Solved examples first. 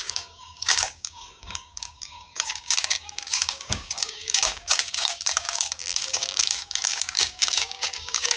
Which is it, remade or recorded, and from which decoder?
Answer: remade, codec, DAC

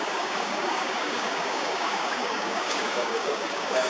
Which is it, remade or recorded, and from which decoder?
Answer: remade, codec, DAC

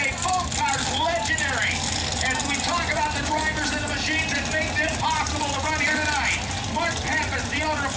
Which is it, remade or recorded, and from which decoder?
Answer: recorded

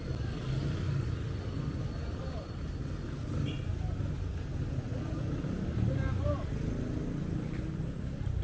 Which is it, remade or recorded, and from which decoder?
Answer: recorded